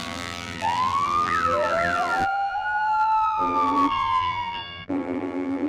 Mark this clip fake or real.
fake